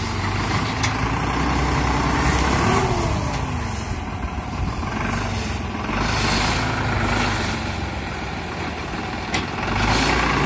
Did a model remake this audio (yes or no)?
no